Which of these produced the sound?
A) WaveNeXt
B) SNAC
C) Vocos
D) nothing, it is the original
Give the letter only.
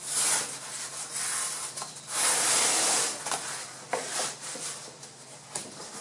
D